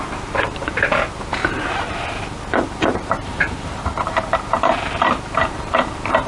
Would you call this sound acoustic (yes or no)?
no